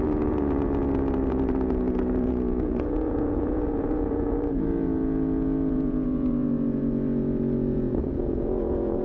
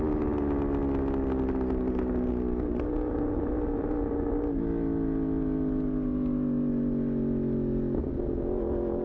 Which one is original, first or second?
second